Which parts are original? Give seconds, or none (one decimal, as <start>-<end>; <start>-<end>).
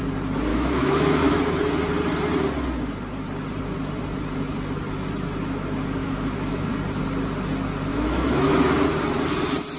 0.0-0.5; 1.4-6.0; 6.7-7.9; 8.6-9.8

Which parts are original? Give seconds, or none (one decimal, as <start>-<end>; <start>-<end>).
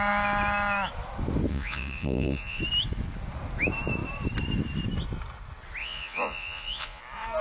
0.0-1.5; 2.6-5.8; 7.0-7.4